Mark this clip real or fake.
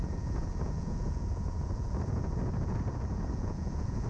fake